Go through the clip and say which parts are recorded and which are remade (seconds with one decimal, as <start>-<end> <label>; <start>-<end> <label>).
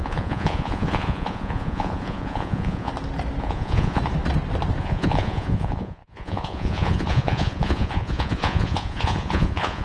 0.0-2.9 remade; 2.9-3.4 recorded; 3.4-4.0 remade; 4.0-4.8 recorded; 4.8-9.8 remade